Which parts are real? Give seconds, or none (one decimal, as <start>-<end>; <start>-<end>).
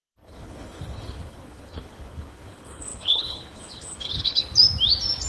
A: 4.4-5.3